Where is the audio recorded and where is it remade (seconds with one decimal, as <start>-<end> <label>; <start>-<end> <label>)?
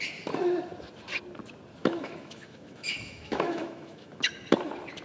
0.0-1.8 recorded; 1.8-4.2 remade; 4.2-5.0 recorded